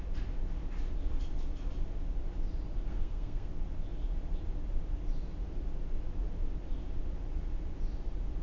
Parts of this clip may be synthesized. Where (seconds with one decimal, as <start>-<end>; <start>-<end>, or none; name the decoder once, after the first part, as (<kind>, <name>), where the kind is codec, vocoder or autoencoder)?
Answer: 2.9-3.5 (codec, SNAC)